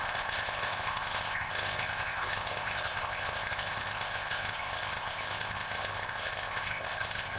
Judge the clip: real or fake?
fake